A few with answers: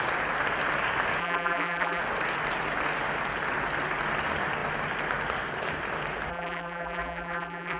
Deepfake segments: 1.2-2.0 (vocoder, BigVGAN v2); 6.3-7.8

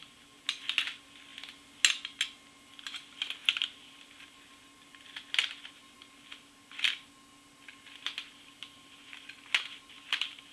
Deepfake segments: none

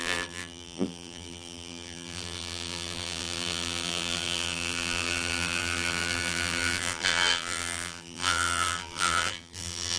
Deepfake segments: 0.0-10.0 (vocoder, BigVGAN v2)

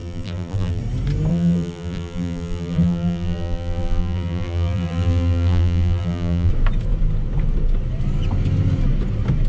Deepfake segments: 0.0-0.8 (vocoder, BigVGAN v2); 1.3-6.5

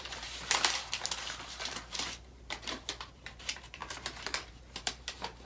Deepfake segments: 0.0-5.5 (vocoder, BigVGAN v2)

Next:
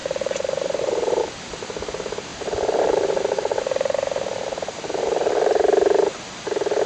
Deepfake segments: 0.0-1.2 (vocoder, BigVGAN v2); 2.3-6.4